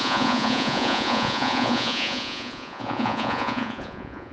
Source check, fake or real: fake